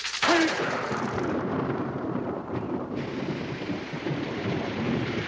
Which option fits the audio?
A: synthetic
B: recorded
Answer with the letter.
A